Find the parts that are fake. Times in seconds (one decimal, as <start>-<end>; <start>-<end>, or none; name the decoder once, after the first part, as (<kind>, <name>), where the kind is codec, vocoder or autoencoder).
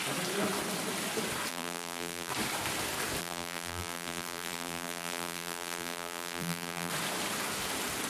1.5-2.3 (vocoder, BigVGAN v2); 3.2-6.9